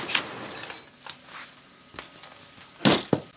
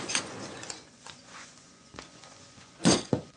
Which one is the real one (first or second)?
first